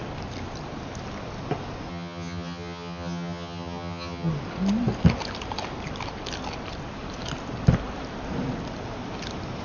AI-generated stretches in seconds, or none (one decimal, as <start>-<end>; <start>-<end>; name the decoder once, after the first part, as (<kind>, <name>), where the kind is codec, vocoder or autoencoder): 1.9-4.3 (vocoder, HiFi-GAN)

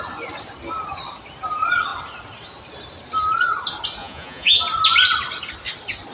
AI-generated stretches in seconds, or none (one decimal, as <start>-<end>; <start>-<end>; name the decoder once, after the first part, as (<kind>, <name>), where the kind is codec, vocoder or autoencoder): 4.0-4.6 (vocoder, Vocos)

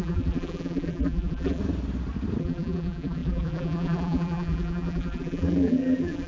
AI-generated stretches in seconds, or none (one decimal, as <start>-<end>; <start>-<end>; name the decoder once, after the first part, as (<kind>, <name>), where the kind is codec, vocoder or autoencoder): 0.0-1.6 (vocoder, BigVGAN v2); 2.4-6.3

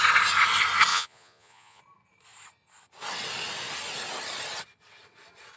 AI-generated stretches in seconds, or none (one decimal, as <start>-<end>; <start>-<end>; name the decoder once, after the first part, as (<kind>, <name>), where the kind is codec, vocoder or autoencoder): 0.9-1.8 (vocoder, Vocos)